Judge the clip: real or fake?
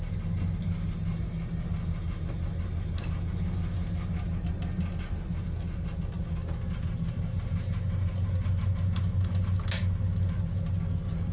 real